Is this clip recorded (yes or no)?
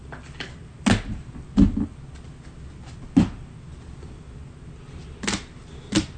yes